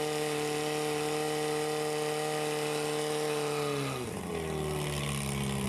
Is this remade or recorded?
recorded